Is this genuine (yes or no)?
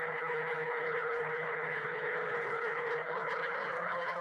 no